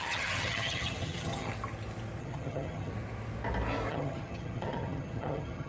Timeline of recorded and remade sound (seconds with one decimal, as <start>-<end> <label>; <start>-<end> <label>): 0.0-1.5 remade; 1.5-2.2 recorded; 2.2-2.9 remade; 2.9-3.9 recorded; 3.9-5.7 remade